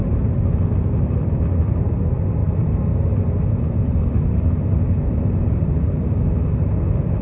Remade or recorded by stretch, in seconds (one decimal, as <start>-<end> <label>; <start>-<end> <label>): 0.0-0.6 remade; 0.6-2.4 recorded; 2.4-6.0 remade; 6.0-7.2 recorded